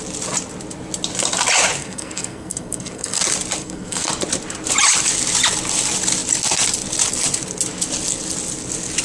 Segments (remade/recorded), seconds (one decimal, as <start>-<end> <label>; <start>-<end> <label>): 0.0-1.8 recorded; 1.8-3.2 remade; 3.2-3.6 recorded; 3.6-4.1 remade; 4.1-9.0 recorded